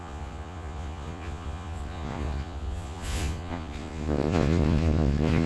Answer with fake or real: fake